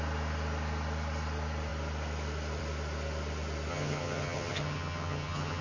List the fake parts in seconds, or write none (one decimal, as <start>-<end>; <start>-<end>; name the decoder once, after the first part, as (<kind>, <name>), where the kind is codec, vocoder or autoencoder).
3.7-5.6 (vocoder, HiFi-GAN)